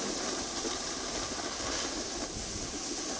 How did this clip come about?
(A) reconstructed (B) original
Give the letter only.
B